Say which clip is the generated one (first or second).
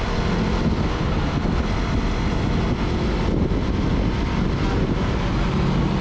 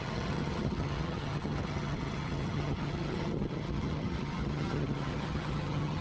second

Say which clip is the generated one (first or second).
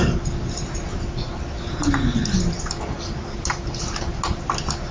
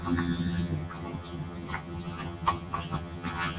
second